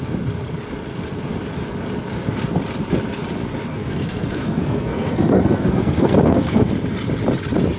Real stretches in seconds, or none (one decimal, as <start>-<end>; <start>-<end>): 0.0-3.7; 6.7-7.8